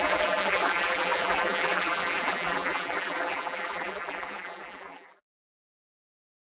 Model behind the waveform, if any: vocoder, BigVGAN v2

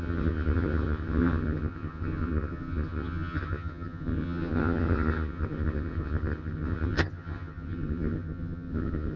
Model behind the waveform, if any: vocoder, HiFi-GAN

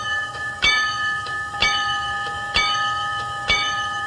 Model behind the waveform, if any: autoencoder, DAC-VAE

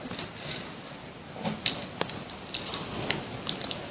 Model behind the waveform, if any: none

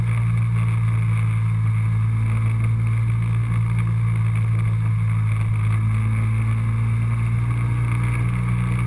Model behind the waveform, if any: none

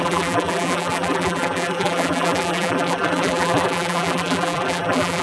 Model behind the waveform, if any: vocoder, BigVGAN v2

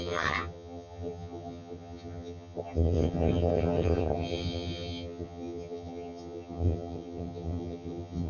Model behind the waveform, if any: vocoder, HiFi-GAN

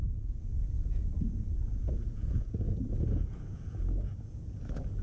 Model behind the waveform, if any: vocoder, Vocos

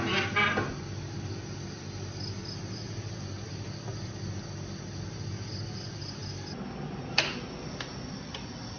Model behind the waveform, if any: none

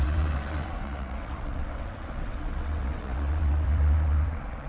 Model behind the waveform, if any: vocoder, WaveNeXt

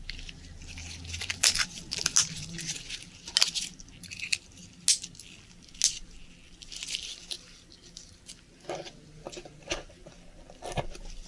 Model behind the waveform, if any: none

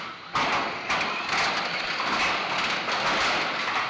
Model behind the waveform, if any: none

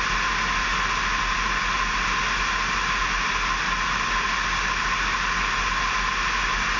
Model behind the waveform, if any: none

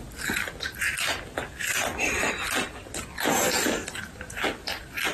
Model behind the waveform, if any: none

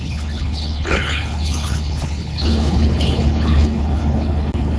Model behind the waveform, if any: codec, HILCodec